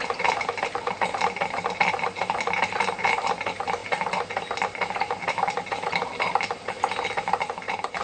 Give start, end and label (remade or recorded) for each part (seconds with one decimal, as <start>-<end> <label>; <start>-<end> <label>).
0.0-8.0 recorded